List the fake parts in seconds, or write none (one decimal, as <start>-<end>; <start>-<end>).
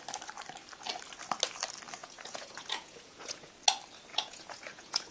2.0-3.5; 4.1-5.1